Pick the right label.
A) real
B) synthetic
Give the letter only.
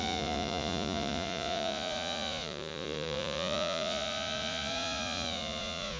B